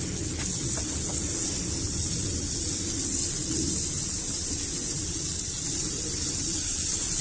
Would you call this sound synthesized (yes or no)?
no